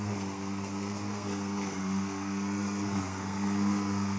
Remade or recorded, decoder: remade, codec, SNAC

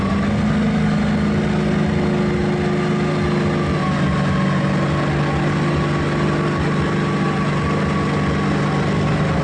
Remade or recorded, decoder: recorded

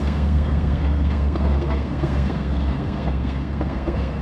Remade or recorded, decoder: remade, codec, SNAC